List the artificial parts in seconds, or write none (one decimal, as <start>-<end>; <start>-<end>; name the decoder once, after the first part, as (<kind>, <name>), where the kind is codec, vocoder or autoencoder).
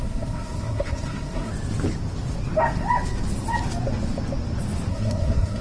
0.0-1.5 (codec, SNAC); 4.9-5.6